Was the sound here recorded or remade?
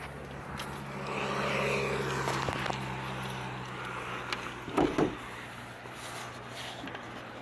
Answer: recorded